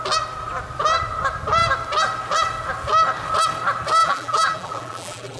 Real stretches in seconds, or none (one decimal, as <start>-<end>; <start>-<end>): 0.0-4.0